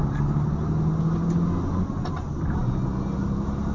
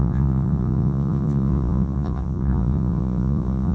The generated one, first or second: second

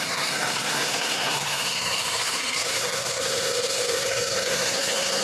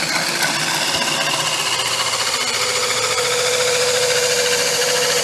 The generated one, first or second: first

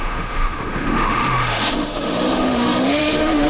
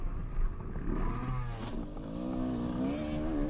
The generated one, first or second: first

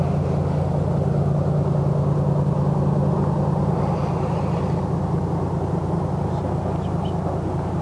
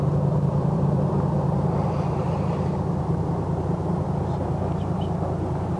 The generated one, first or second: second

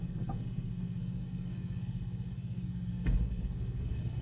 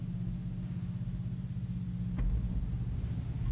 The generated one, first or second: first